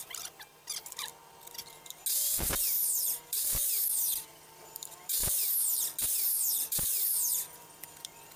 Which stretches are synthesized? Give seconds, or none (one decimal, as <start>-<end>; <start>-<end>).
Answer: 0.0-1.1; 2.6-5.2; 6.0-8.4